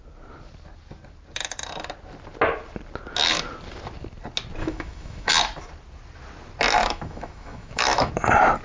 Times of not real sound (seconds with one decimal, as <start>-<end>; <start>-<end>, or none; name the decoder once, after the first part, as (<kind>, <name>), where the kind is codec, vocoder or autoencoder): 4.6-5.3 (autoencoder, DAC-VAE); 6.8-8.1